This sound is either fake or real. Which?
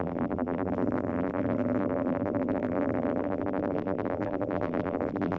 fake